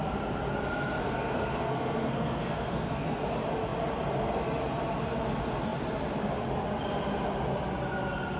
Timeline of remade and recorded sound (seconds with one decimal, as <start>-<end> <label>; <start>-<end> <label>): 0.0-1.0 recorded; 1.0-3.2 remade; 3.2-8.4 recorded